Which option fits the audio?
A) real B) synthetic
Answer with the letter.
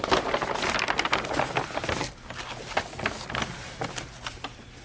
A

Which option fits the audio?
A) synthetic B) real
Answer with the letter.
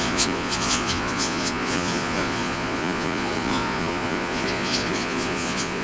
A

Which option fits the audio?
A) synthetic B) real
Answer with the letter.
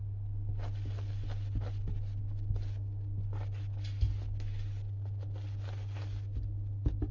B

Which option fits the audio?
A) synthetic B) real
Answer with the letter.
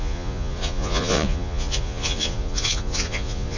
A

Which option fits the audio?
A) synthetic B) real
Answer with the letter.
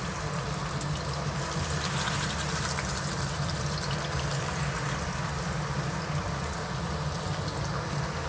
B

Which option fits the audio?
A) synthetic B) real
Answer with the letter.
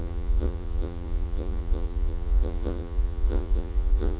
A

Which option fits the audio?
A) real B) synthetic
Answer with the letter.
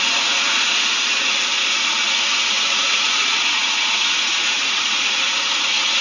B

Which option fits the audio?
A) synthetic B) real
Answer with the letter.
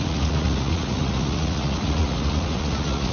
A